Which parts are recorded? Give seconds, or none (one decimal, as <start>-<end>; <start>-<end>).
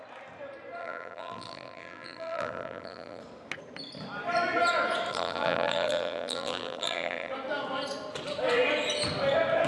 0.0-0.8; 3.2-5.1; 7.3-9.7